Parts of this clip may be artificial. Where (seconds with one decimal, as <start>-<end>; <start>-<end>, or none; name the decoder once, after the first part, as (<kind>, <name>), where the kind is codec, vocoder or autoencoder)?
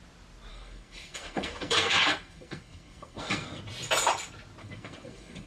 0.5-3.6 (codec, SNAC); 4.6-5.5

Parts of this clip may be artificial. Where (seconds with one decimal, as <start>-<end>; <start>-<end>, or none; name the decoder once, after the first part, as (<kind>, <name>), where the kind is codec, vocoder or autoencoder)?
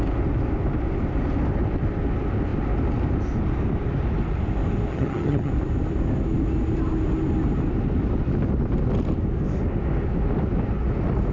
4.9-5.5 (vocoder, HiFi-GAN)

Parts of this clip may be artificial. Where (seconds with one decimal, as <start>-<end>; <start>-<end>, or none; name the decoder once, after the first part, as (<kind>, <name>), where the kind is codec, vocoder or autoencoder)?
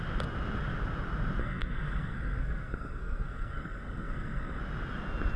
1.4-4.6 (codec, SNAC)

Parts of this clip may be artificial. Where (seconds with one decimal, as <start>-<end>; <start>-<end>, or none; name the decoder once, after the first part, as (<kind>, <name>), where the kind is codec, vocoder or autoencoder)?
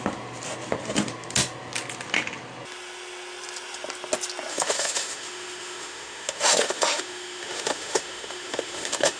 4.5-9.2 (autoencoder, DAC-VAE)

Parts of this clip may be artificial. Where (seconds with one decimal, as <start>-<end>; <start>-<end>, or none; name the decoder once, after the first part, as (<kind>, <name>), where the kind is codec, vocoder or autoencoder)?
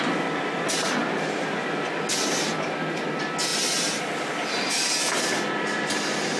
none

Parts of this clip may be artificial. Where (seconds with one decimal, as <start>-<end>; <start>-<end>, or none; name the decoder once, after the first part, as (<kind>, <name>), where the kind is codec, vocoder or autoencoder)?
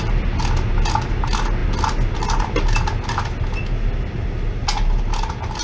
none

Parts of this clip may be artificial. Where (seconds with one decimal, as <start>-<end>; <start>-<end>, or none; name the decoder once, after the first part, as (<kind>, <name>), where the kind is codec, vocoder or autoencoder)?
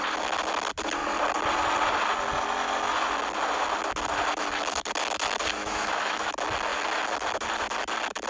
5.6-6.3 (autoencoder, DAC-VAE)